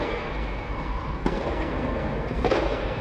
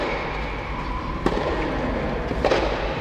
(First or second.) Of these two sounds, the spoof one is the first